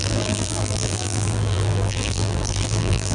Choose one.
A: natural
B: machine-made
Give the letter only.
B